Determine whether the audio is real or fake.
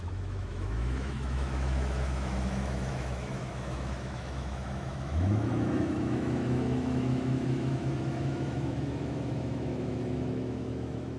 fake